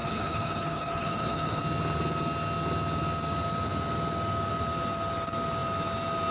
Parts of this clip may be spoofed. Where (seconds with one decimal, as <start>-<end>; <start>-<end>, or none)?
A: 0.0-1.6